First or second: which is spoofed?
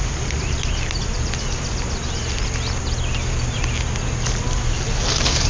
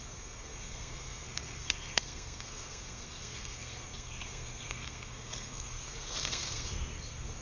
second